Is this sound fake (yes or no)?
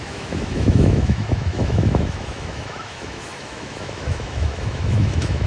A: yes